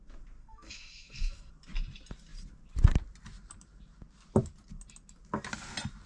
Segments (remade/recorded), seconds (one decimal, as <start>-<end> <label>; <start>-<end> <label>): 0.0-0.4 recorded; 0.4-1.5 remade; 1.5-6.1 recorded